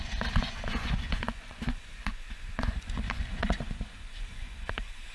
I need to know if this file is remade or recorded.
remade